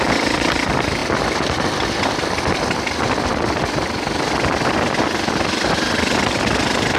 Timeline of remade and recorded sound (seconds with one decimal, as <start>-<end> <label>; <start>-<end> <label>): 0.0-7.0 recorded